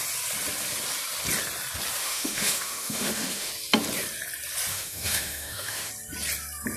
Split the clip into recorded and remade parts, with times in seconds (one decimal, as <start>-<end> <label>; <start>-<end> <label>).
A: 0.0-2.0 recorded; 2.0-3.5 remade; 3.5-4.7 recorded; 4.7-5.9 remade; 5.9-6.8 recorded